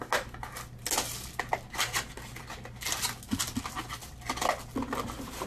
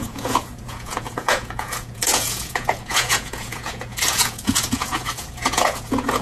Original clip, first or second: first